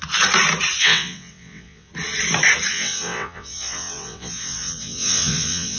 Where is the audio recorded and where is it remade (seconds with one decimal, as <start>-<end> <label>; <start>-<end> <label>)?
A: 0.0-0.8 recorded; 0.8-1.9 remade; 1.9-2.7 recorded; 2.7-5.8 remade